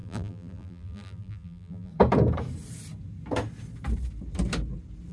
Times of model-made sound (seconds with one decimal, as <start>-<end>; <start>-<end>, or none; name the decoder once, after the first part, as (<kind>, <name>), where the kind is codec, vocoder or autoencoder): 0.0-1.9 (vocoder, BigVGAN v2)

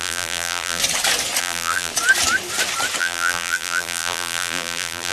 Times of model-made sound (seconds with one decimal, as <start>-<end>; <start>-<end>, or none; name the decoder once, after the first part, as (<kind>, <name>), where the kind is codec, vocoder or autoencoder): 0.0-0.8 (vocoder, BigVGAN v2); 1.4-1.9; 3.0-5.1

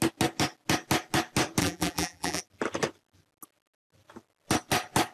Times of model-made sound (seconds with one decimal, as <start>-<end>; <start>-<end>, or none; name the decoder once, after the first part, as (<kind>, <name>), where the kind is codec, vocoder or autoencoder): 1.6-2.4 (vocoder, BigVGAN v2)

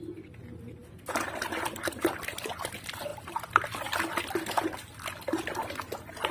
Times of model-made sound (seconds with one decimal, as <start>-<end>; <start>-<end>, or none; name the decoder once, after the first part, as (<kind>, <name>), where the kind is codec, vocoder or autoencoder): 3.1-4.2 (vocoder, BigVGAN v2)

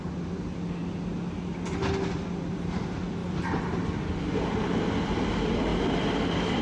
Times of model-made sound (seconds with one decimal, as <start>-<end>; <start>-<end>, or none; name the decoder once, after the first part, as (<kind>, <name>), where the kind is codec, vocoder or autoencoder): 3.2-5.0 (vocoder, BigVGAN v2); 5.7-6.6

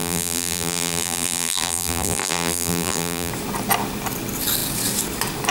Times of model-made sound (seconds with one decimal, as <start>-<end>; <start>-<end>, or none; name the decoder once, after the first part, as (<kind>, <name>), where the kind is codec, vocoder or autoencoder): 0.0-3.3 (vocoder, BigVGAN v2)